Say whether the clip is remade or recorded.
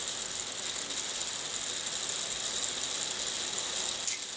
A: recorded